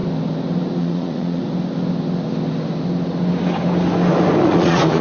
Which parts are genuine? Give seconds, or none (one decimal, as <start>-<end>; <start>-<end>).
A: 0.0-0.8; 1.4-4.4

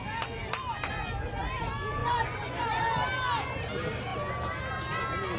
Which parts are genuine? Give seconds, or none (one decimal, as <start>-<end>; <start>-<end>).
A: 0.0-2.0; 2.8-5.4

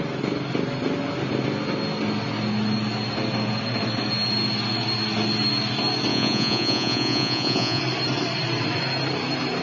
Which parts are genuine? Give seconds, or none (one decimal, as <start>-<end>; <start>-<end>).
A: 0.0-6.1; 7.8-9.6

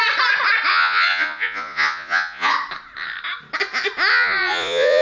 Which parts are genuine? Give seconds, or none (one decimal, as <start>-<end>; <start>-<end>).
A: 0.0-0.7; 2.5-4.1

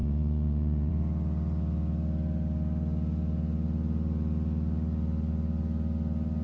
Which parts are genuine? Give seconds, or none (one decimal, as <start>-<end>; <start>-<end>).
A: 0.9-6.4

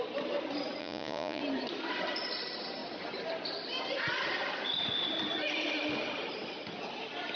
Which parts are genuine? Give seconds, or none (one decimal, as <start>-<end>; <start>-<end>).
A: 0.0-0.8; 1.4-7.4